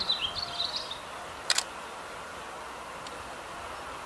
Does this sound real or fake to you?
real